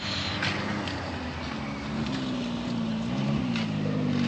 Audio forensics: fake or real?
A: real